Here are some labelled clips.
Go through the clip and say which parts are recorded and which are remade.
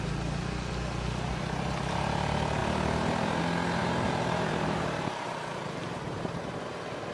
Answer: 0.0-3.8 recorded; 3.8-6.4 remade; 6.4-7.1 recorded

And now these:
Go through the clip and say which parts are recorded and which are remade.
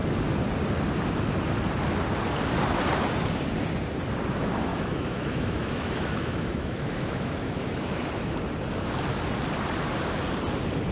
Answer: 0.0-4.7 recorded; 4.7-8.1 remade; 8.1-10.9 recorded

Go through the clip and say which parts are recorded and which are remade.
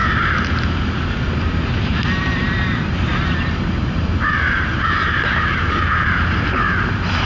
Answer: 0.0-2.2 recorded; 2.2-3.1 remade; 3.1-3.8 recorded; 3.8-7.3 remade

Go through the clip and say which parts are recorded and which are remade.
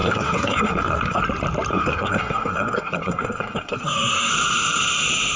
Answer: 0.0-1.2 remade; 1.2-1.7 recorded; 1.7-4.3 remade; 4.3-5.4 recorded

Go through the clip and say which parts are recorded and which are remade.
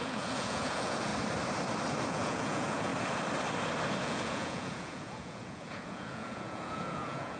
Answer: 0.0-1.1 remade; 1.1-2.1 recorded; 2.1-2.9 remade; 2.9-4.0 recorded; 4.0-7.4 remade